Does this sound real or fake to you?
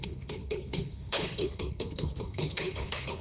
fake